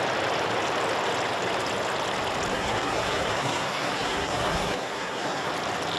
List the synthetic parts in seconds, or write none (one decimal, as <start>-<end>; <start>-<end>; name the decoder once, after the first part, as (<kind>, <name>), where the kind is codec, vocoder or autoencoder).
2.5-5.5 (codec, SNAC)